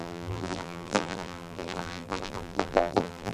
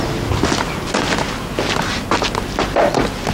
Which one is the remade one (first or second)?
first